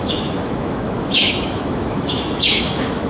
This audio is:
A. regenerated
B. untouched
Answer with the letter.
A